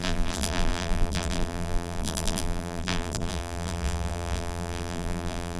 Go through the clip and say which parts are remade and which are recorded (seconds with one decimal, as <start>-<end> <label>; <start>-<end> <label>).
0.0-5.6 remade